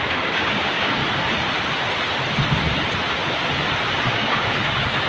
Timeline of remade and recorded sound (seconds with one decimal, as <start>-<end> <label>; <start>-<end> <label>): 0.0-1.0 remade; 1.0-4.1 recorded; 4.1-5.1 remade